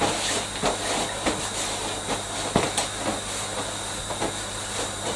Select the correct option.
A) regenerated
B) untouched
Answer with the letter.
B